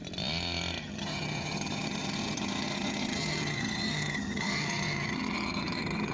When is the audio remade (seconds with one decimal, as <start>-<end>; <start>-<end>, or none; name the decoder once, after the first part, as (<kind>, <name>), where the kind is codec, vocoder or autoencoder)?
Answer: 0.8-6.1 (vocoder, HiFi-GAN)